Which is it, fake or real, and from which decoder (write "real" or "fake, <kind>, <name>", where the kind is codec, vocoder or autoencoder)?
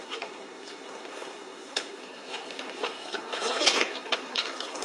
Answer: fake, codec, SNAC